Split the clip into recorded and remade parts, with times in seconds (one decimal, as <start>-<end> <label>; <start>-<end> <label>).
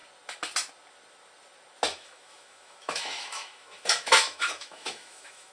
0.0-1.9 recorded; 1.9-5.5 remade